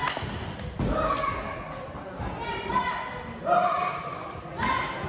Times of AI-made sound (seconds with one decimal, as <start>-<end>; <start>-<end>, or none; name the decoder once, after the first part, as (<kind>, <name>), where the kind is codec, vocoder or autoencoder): none